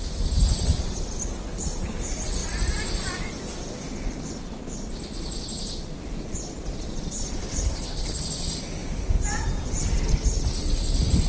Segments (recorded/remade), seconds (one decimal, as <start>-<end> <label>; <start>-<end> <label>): 0.0-7.4 recorded; 7.4-8.2 remade; 8.2-11.3 recorded